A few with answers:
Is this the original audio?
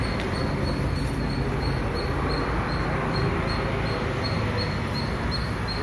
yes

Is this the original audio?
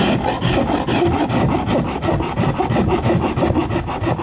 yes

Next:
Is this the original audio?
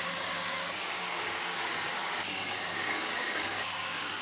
no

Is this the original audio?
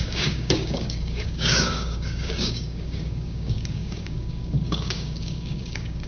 no